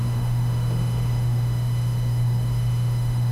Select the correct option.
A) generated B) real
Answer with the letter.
A